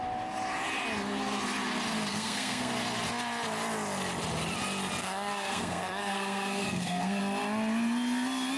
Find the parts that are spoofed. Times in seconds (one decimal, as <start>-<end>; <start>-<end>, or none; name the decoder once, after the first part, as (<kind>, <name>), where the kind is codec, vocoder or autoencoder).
2.1-2.7 (codec, SNAC); 5.0-7.2